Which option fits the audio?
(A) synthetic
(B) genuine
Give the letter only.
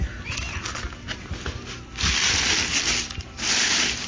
B